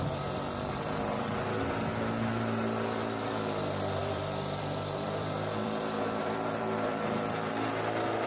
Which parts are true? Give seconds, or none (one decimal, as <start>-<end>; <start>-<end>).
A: 0.0-4.0; 7.5-8.3